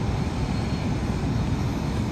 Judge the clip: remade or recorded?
recorded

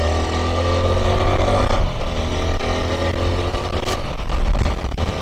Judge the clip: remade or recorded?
recorded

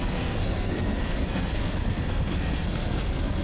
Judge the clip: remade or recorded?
remade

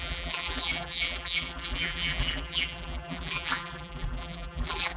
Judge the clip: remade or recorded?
remade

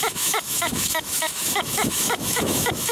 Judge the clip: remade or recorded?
remade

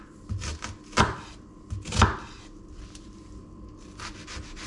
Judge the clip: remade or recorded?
recorded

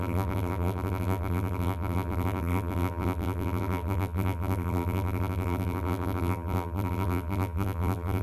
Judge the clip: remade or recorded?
remade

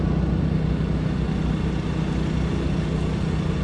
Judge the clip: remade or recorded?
recorded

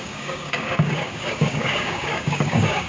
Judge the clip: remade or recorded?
remade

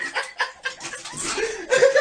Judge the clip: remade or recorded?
recorded